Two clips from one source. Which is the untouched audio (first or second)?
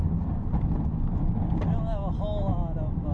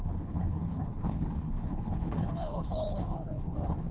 first